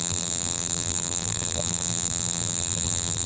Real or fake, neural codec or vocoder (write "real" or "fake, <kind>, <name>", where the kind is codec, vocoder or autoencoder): fake, vocoder, BigVGAN v2